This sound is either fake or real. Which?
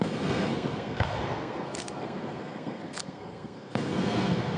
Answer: fake